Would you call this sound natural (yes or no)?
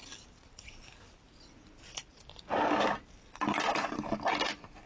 yes